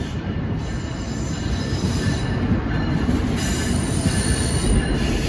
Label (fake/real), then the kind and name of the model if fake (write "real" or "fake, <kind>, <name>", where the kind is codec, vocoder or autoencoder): real